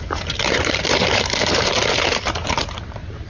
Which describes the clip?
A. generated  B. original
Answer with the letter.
A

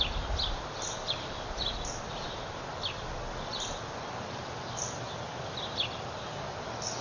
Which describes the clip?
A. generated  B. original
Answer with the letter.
B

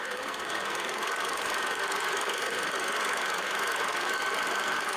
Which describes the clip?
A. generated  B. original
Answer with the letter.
A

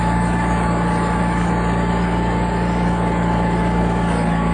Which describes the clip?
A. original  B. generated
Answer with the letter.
B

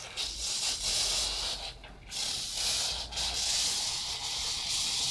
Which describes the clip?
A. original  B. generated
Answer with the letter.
A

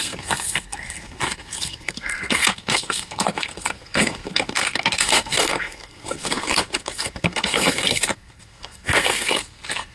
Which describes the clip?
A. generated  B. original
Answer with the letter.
A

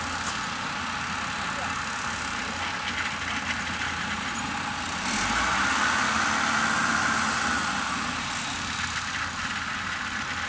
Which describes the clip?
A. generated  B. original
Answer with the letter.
B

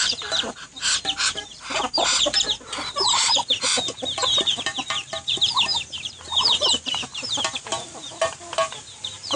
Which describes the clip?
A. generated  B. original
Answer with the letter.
A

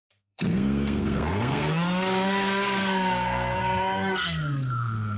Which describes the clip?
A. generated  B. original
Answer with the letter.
A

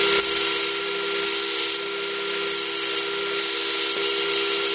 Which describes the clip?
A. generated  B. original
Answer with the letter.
B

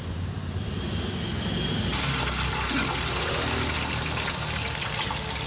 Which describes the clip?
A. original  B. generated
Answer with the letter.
A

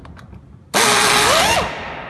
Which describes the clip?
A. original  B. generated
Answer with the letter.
A